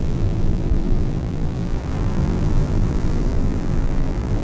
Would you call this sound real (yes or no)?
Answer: no